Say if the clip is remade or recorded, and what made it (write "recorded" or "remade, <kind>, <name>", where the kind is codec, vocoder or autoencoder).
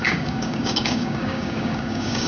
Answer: remade, codec, DAC